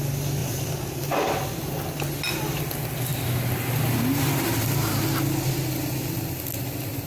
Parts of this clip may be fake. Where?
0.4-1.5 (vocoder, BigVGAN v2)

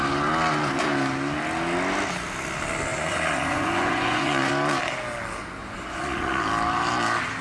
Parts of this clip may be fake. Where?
2.9-4.5 (vocoder, Vocos); 5.6-6.4

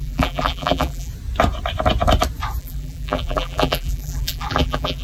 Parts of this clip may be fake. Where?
0.0-1.1 (vocoder, BigVGAN v2); 2.6-5.0

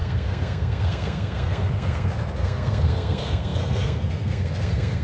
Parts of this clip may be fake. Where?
0.0-5.0 (codec, SNAC)

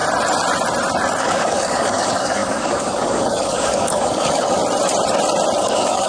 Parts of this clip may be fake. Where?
1.2-4.6 (codec, DAC); 5.6-6.1

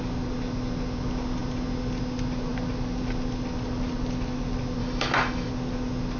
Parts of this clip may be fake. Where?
4.8-5.5 (autoencoder, DAC-VAE)

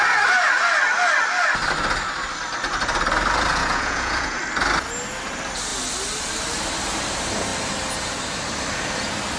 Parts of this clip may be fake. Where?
3.5-4.4 (vocoder, Vocos)